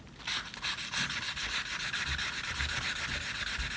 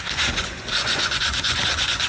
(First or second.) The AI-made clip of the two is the second